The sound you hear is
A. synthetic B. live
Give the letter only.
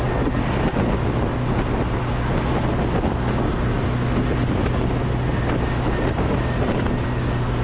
B